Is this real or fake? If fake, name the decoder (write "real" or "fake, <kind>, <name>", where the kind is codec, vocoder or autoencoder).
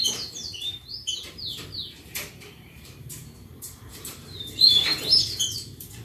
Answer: fake, vocoder, BigVGAN v2